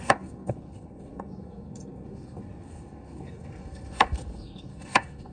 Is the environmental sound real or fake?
fake